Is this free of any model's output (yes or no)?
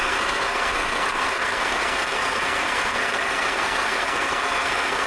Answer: no